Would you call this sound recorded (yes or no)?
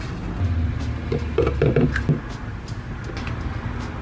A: yes